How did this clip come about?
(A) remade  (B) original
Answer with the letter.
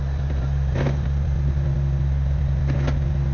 B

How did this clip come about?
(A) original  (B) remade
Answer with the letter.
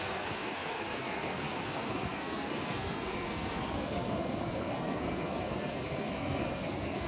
B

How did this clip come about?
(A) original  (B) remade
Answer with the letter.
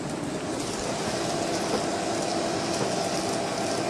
A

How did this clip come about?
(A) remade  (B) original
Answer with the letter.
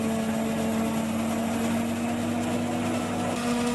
B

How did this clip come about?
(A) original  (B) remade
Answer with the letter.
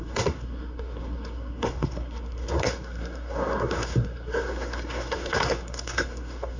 B